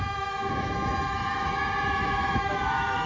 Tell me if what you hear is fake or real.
fake